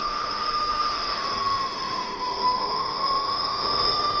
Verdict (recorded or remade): remade